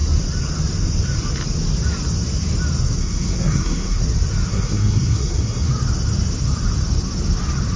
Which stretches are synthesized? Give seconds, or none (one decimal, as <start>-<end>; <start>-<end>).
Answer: 3.0-4.0; 4.5-5.7